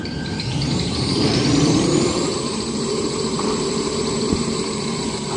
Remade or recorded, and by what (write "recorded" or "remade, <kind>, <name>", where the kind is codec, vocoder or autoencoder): remade, vocoder, BigVGAN v2